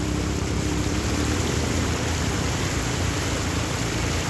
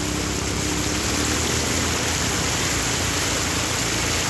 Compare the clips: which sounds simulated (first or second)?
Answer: first